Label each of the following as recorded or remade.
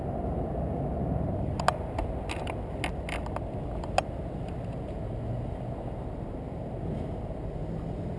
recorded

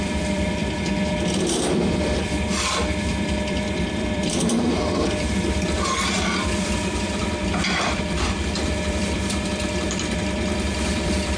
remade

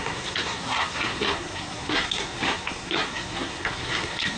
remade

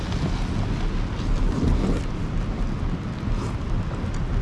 recorded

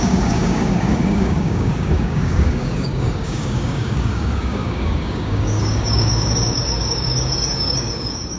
remade